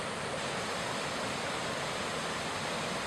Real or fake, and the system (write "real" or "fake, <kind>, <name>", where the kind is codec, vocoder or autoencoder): real